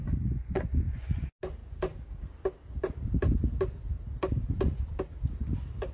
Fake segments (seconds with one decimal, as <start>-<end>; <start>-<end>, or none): 0.0-1.2